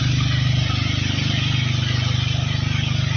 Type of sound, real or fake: real